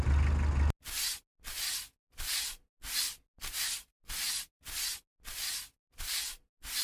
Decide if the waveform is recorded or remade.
recorded